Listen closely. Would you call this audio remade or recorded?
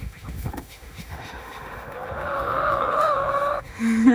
remade